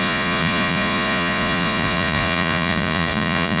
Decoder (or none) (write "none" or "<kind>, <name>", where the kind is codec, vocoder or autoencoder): vocoder, Vocos